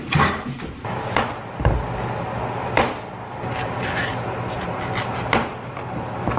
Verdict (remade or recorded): recorded